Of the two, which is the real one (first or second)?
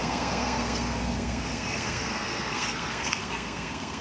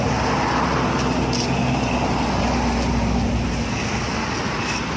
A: second